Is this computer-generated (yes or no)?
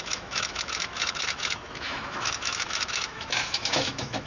yes